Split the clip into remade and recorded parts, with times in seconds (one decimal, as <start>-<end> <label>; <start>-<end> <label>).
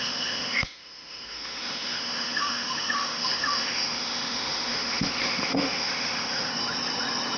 0.0-6.5 remade; 6.5-7.4 recorded